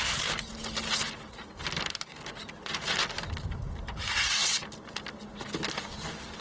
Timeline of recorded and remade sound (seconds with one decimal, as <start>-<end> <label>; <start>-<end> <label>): 0.0-6.4 recorded